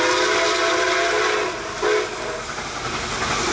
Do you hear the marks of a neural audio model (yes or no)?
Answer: no